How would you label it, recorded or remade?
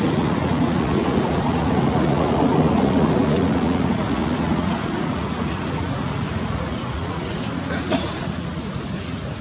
remade